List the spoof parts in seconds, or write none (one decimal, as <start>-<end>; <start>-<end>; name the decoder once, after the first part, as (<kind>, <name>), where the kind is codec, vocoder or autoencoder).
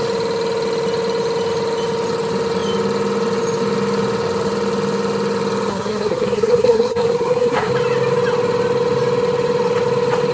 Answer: 5.7-7.7 (codec, SNAC)